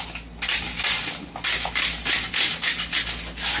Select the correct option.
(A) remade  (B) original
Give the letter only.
B